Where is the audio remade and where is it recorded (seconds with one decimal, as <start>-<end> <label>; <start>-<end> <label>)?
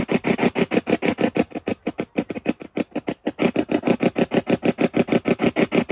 0.0-1.7 recorded; 1.7-2.3 remade; 2.3-5.9 recorded